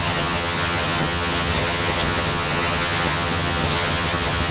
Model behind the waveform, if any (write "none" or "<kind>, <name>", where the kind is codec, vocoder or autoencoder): vocoder, HiFi-GAN